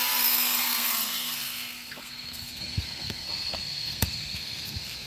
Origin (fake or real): fake